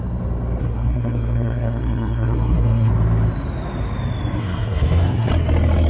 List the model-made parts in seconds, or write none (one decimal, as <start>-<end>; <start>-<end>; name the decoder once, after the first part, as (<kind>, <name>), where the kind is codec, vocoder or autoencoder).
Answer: 0.6-2.9 (codec, SNAC); 4.4-5.3